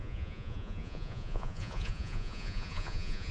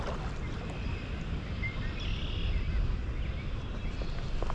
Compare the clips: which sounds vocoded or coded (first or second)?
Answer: first